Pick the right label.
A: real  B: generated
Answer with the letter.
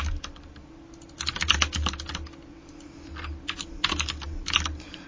A